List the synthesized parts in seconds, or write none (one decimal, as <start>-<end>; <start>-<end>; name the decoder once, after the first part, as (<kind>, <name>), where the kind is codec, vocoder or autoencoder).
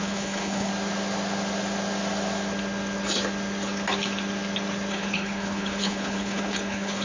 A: 0.0-0.7 (codec, HILCodec); 4.9-7.0